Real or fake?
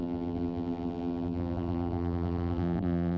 fake